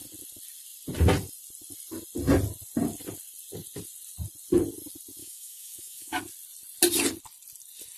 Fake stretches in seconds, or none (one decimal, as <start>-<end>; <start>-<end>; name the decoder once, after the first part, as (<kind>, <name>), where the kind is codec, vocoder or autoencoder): 5.2-6.2 (autoencoder, DAC-VAE)